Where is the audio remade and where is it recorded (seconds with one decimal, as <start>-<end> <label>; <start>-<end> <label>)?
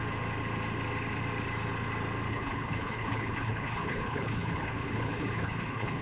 0.0-2.3 recorded; 2.3-6.0 remade